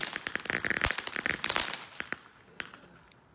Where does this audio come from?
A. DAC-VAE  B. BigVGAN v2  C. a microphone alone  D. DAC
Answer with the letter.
C